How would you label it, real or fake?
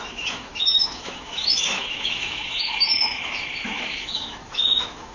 fake